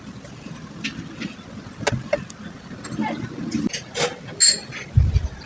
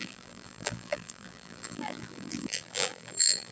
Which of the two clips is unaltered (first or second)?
first